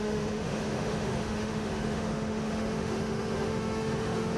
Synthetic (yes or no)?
yes